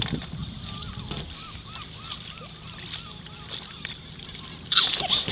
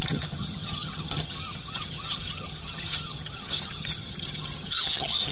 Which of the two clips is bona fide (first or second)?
first